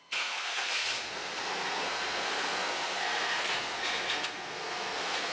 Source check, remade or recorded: remade